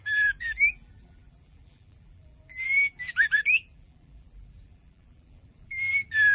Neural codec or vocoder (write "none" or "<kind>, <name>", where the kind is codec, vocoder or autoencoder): vocoder, BigVGAN v2